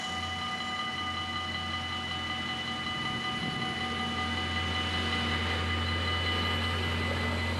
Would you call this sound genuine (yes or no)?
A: yes